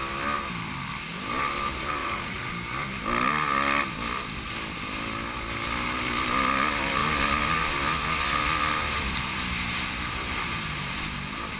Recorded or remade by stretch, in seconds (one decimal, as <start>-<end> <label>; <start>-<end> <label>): 0.0-2.0 recorded; 2.0-2.5 remade; 2.5-11.6 recorded